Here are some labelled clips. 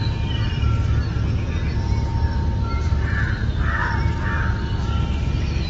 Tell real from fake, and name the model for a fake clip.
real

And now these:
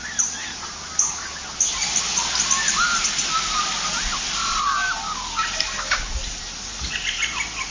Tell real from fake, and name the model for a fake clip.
real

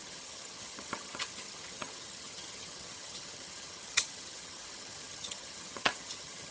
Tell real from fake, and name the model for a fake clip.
fake, vocoder, HiFi-GAN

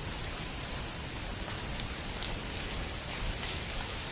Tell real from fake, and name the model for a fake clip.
real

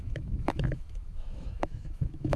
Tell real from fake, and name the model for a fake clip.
fake, autoencoder, DAC-VAE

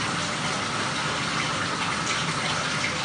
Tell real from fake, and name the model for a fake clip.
real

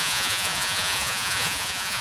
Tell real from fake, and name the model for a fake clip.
fake, vocoder, Vocos